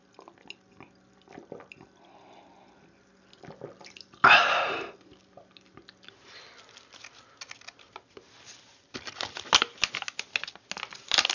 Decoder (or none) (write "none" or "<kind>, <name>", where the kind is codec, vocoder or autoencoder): none